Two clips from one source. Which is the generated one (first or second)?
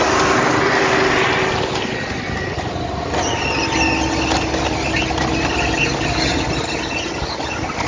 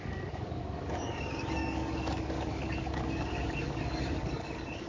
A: second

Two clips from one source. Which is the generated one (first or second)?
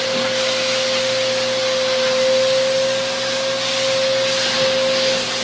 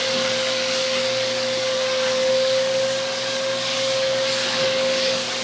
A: second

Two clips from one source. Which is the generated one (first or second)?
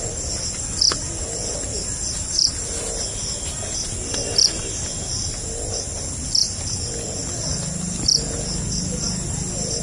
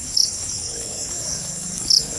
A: second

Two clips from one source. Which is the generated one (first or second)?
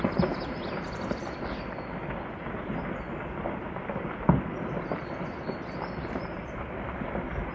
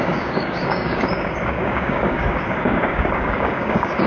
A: second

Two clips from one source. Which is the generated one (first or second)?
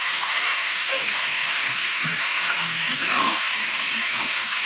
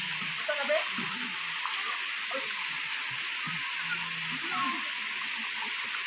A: first